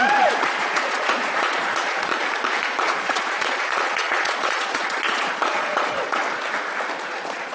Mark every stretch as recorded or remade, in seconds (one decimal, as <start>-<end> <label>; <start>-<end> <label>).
0.0-2.1 remade; 2.1-2.8 recorded; 2.8-6.2 remade; 6.2-7.1 recorded; 7.1-7.5 remade